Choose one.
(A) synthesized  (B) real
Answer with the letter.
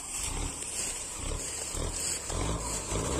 A